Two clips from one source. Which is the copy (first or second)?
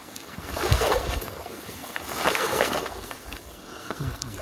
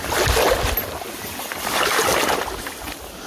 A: first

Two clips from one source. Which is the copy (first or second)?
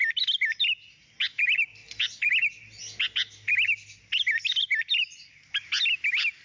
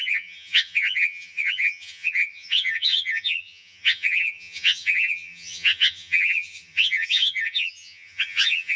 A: second